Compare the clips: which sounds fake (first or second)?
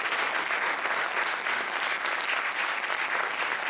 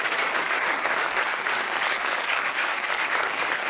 second